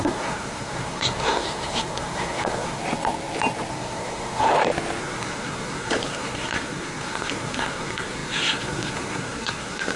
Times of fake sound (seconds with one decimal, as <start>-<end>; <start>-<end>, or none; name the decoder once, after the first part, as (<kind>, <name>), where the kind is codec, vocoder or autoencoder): 0.0-2.8 (codec, SNAC); 3.7-4.5; 5.0-10.0